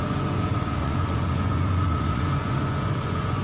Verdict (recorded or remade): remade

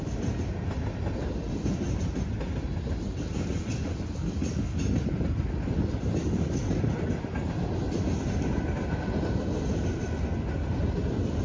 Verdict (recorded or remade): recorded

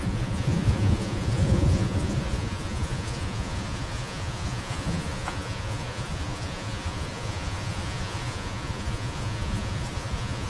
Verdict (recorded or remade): remade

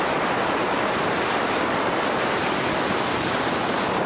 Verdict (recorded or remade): recorded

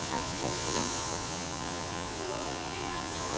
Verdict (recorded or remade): remade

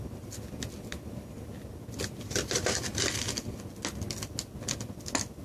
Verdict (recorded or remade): recorded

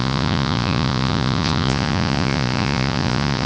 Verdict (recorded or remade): remade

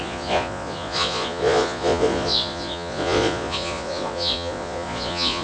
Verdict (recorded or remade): remade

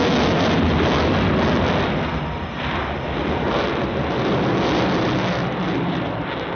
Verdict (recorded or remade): recorded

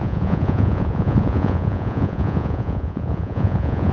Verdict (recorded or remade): remade